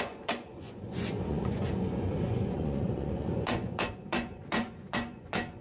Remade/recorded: remade